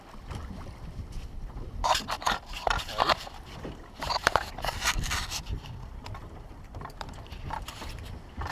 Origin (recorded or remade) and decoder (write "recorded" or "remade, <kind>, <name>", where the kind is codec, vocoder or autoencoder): remade, vocoder, BigVGAN v2